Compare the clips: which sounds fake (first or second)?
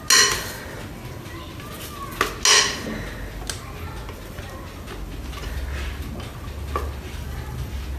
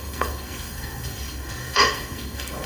second